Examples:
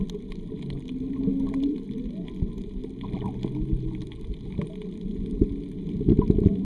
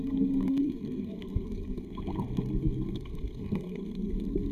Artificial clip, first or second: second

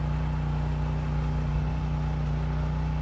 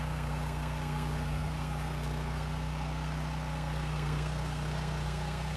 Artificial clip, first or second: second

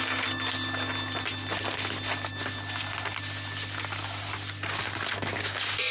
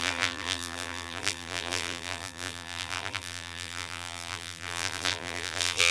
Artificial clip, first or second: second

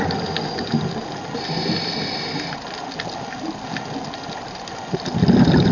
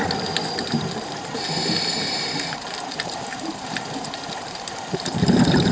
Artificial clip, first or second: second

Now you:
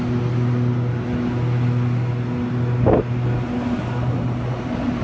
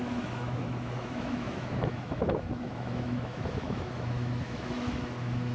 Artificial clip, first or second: second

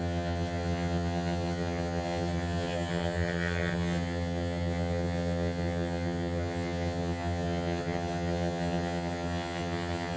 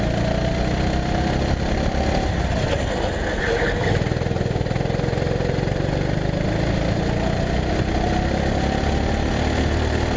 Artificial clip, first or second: first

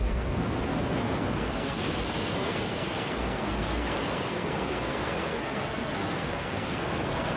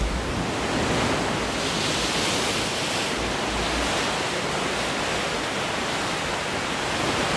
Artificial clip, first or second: first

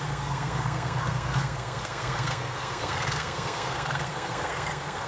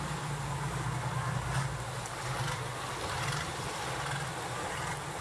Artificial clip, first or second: first